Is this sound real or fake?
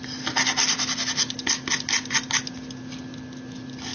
real